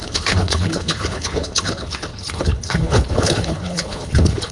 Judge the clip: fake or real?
fake